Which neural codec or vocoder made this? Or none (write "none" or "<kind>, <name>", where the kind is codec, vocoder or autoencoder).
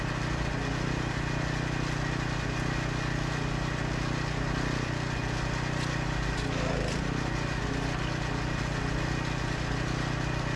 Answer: none